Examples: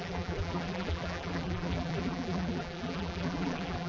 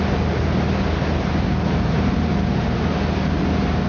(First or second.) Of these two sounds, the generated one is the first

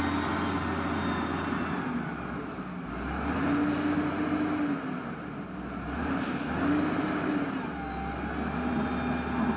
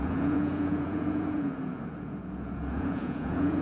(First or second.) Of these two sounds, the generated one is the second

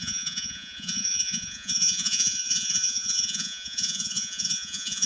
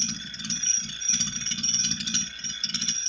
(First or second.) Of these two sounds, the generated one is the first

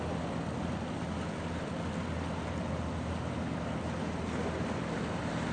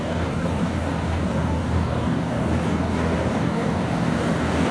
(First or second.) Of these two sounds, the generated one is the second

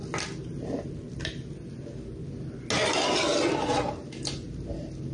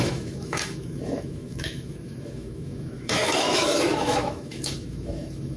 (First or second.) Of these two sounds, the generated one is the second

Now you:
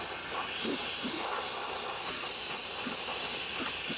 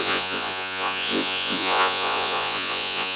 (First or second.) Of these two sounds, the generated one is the second